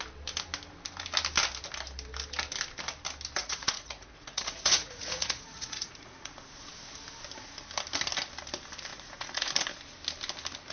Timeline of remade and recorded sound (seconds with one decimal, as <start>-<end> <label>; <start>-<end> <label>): 0.0-3.4 recorded; 3.4-6.7 remade; 6.7-8.9 recorded; 8.9-9.5 remade; 9.5-10.7 recorded